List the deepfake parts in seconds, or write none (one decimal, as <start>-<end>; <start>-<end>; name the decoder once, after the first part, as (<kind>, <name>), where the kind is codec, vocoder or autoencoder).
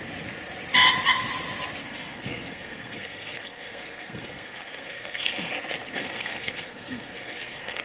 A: 1.8-5.5 (codec, SNAC); 5.9-7.8